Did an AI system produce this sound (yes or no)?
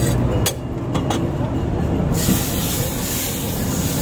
no